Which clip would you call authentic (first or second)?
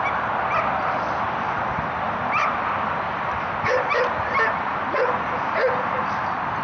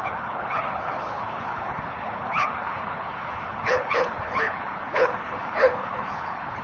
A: first